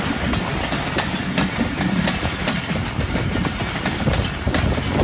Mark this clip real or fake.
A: real